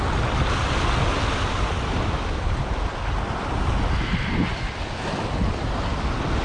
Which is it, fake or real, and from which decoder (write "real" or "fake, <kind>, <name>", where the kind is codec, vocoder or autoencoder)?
real